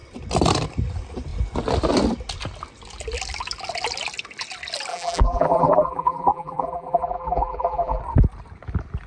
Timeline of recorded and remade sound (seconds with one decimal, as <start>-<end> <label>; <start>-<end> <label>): 0.0-4.9 recorded; 4.9-8.0 remade; 8.0-9.1 recorded